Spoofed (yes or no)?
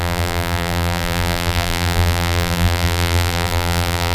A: yes